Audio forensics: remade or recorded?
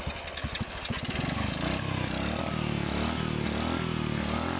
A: recorded